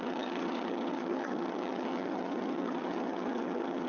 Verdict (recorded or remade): remade